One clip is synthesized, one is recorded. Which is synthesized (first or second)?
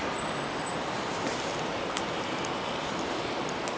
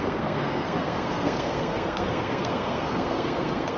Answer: second